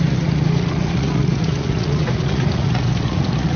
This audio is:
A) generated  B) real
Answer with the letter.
A